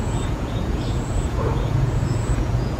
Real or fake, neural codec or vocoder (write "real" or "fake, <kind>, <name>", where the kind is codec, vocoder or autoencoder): fake, vocoder, Vocos